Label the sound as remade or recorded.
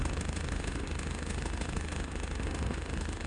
remade